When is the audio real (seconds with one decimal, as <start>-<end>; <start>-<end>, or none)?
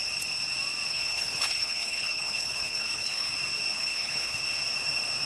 0.0-0.9; 3.3-3.7; 4.4-5.3